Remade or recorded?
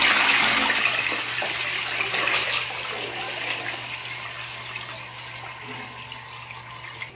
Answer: recorded